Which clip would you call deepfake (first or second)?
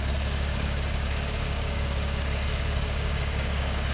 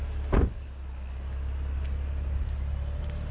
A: first